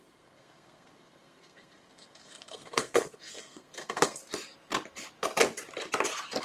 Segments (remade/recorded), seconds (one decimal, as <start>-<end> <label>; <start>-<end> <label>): 0.0-4.2 remade; 4.2-6.4 recorded

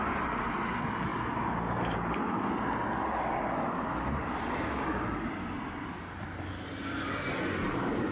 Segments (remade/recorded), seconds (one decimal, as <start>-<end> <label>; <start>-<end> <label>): 0.0-8.1 recorded